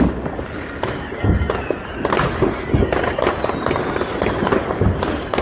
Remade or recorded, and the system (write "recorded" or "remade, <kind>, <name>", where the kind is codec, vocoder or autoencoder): recorded